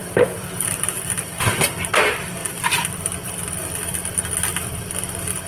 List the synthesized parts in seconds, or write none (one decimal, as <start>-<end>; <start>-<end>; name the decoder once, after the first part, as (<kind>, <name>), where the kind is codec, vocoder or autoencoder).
0.0-1.9 (vocoder, BigVGAN v2); 2.4-3.3; 4.5-5.0